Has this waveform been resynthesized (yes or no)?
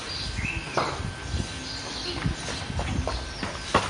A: no